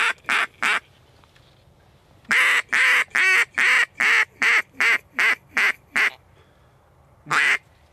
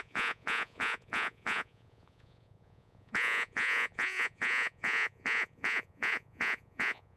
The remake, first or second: second